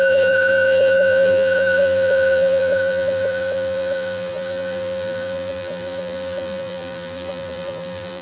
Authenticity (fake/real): fake